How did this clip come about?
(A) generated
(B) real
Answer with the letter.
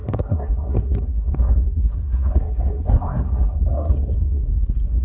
A